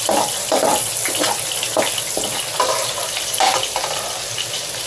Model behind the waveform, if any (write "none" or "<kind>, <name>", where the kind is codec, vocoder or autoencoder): none